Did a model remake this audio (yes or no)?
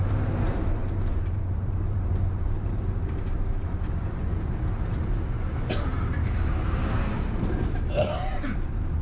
yes